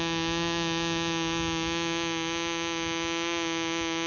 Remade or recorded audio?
recorded